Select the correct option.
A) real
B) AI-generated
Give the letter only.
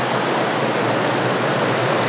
A